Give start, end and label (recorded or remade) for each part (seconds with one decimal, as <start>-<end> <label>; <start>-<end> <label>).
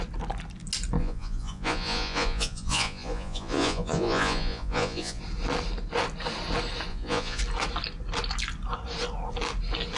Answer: 0.0-1.0 recorded; 1.0-5.2 remade; 5.2-6.9 recorded; 6.9-7.4 remade; 7.4-10.0 recorded